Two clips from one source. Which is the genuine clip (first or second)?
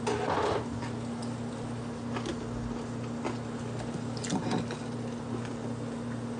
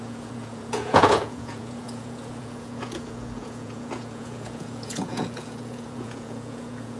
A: first